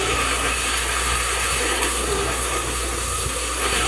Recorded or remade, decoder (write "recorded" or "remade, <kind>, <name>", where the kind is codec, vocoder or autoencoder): remade, codec, SNAC